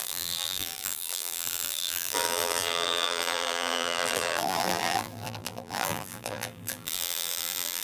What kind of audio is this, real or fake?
fake